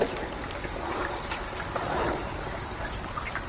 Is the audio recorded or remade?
remade